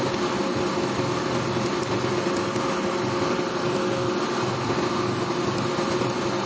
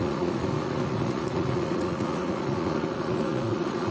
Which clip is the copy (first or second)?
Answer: second